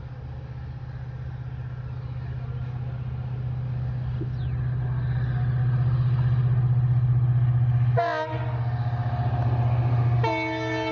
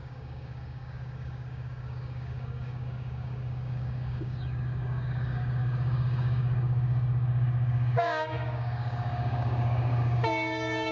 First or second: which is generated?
second